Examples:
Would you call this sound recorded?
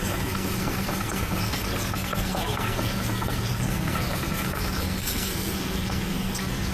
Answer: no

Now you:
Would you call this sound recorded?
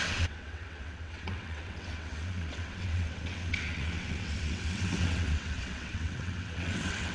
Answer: no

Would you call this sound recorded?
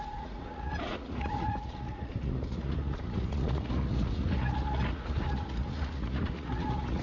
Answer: no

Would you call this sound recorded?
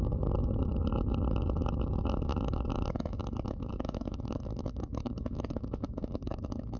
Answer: no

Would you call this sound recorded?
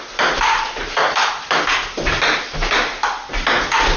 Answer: yes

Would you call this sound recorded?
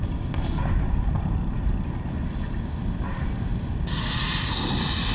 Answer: yes